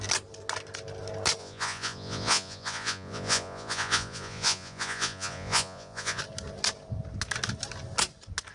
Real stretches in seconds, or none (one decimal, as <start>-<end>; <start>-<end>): 0.0-1.4; 6.2-8.5